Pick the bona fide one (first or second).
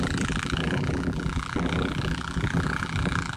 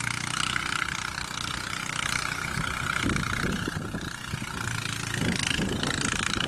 second